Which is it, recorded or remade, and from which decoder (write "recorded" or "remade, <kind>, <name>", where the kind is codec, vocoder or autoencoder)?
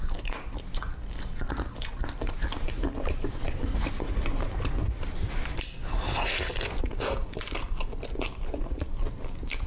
recorded